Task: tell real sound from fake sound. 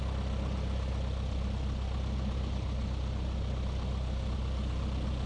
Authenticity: real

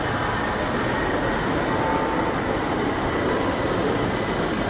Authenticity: real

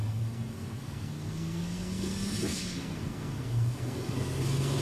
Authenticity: fake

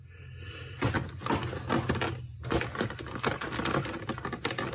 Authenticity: real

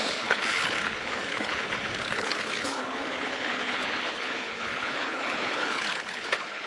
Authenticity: fake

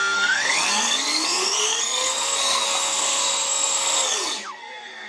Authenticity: fake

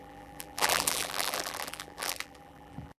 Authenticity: fake